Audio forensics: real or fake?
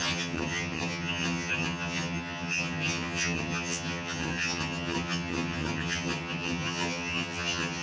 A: fake